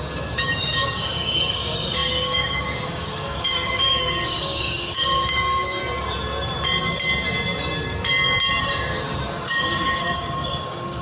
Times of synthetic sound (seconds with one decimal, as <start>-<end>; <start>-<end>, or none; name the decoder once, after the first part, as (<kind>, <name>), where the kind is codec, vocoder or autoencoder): 0.0-5.8 (codec, DAC); 8.6-11.0